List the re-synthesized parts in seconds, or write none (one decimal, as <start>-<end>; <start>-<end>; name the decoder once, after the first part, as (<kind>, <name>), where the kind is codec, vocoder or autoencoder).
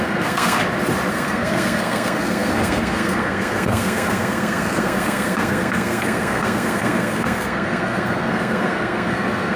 0.0-0.6 (codec, SNAC); 1.1-9.6